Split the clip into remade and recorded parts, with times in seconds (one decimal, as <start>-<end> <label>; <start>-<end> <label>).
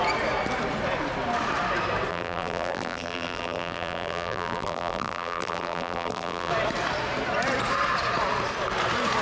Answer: 0.0-2.1 recorded; 2.1-6.5 remade; 6.5-9.2 recorded